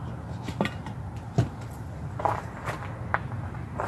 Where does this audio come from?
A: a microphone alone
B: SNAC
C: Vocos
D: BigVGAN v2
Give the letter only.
A